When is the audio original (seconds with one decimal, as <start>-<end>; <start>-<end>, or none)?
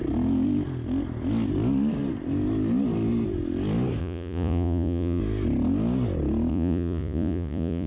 0.0-4.0; 5.2-6.5